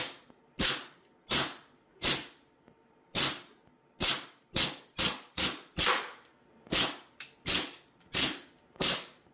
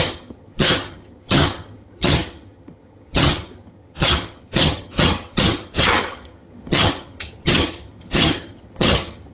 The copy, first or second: second